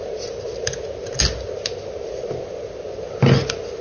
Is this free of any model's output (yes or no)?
yes